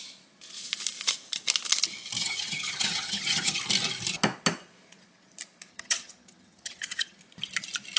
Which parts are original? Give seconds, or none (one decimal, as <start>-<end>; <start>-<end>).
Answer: 0.0-2.2; 3.6-5.7; 7.2-8.0